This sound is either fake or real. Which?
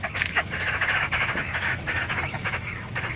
fake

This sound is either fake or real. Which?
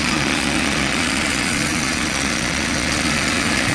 fake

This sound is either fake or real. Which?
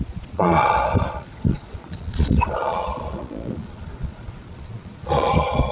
fake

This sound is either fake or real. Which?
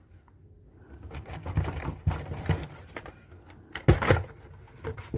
real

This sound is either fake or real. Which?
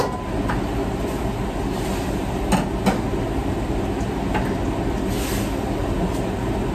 real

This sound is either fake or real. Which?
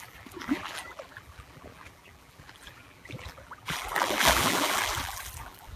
fake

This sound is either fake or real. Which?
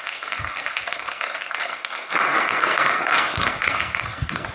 fake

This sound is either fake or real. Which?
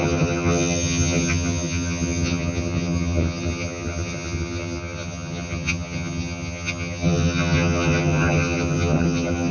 fake